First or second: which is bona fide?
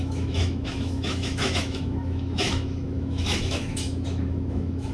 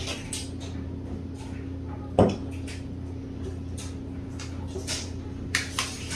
second